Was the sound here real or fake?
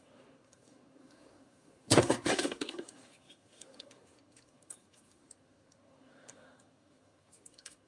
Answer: fake